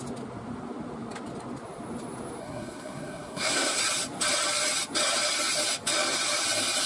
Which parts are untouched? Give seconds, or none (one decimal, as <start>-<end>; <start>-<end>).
0.0-2.4; 3.8-6.9